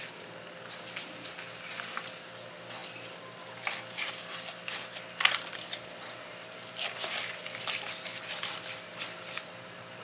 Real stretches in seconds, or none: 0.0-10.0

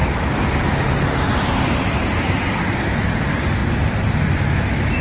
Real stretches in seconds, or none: 0.0-1.3; 2.6-3.6; 4.2-5.0